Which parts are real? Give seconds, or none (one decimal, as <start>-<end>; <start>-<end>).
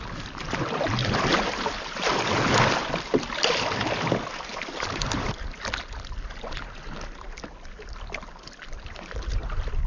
0.0-1.3; 2.1-4.7; 5.3-9.9